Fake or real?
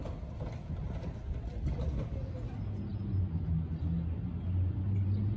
real